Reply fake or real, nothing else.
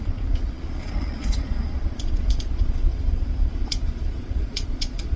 fake